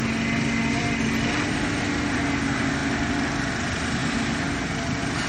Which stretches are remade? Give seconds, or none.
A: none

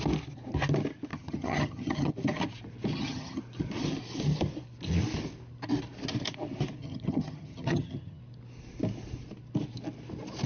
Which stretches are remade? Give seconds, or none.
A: 1.1-2.1 (vocoder, HiFi-GAN); 2.9-3.4; 6.8-8.2

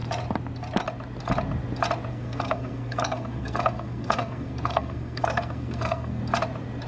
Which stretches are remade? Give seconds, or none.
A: 2.1-6.2 (codec, SNAC)

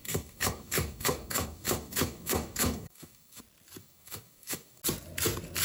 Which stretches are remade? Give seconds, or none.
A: 0.0-3.4 (codec, DAC); 3.8-4.8